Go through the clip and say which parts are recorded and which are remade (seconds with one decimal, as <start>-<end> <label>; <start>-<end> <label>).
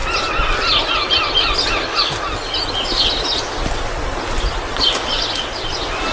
0.0-6.1 recorded